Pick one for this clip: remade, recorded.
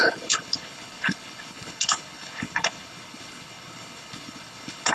remade